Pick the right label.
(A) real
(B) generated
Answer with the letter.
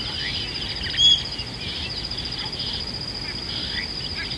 A